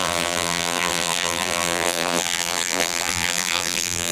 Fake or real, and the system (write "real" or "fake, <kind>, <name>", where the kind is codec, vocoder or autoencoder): fake, vocoder, BigVGAN v2